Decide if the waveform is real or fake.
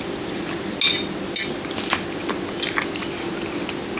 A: real